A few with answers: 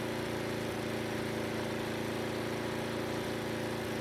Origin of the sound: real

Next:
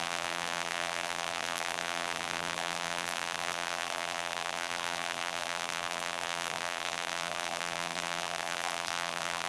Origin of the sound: fake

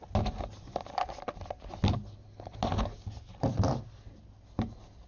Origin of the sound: real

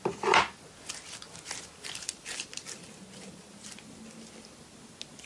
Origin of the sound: real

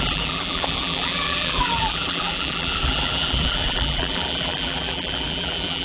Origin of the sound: fake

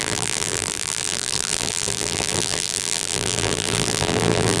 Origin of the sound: fake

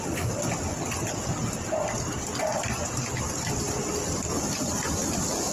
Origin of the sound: real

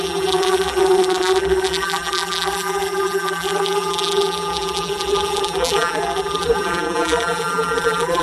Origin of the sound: fake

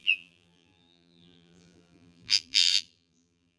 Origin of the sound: fake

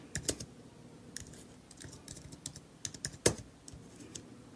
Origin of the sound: real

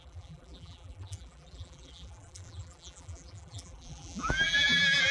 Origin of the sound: fake